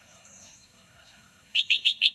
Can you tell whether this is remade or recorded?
remade